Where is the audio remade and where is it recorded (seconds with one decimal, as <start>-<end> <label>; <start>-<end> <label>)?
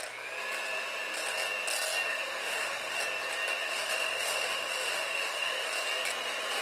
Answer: 0.0-2.1 recorded; 2.1-3.0 remade; 3.0-3.6 recorded; 3.6-5.7 remade; 5.7-6.6 recorded